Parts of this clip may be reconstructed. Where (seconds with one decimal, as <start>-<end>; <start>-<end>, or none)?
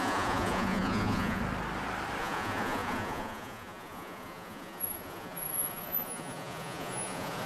0.0-1.4; 2.2-7.5